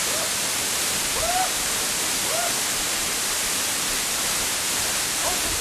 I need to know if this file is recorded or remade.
recorded